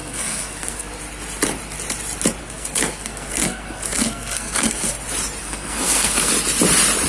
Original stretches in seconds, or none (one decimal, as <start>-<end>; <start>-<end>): 0.9-2.4; 4.9-5.4; 6.3-7.1